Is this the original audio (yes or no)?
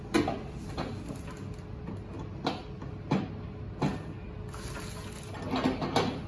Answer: yes